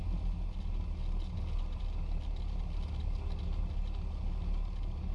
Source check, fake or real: real